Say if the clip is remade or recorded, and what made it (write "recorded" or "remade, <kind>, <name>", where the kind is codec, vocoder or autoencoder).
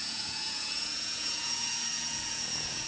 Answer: remade, vocoder, Vocos